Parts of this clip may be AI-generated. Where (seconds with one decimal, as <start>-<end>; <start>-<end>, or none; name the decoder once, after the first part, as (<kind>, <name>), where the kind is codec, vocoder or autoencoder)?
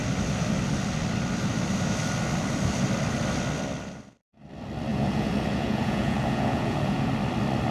4.9-7.1 (vocoder, Vocos)